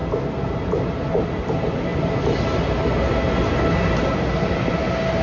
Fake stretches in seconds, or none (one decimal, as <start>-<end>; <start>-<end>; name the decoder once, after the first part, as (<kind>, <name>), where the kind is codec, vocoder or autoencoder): none